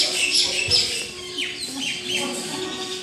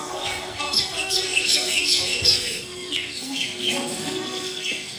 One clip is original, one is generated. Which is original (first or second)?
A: first